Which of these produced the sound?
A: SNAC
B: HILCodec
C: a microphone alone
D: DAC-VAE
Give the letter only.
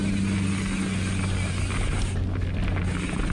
C